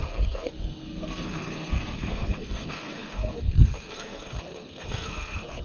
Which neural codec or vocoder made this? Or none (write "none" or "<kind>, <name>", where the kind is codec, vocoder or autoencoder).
codec, SNAC